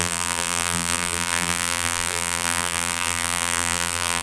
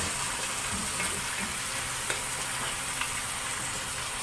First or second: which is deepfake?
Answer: first